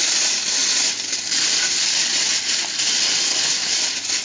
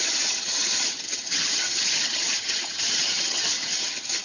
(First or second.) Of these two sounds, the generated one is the second